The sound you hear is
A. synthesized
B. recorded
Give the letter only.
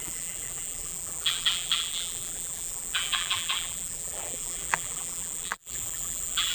A